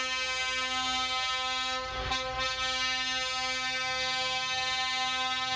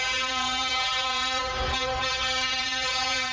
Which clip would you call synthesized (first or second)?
second